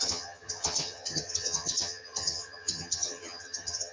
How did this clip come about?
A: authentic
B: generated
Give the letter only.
B